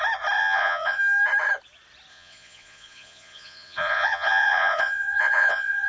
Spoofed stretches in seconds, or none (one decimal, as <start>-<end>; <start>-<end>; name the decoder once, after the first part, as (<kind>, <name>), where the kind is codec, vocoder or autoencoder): 0.4-1.0 (vocoder, Vocos); 2.1-5.9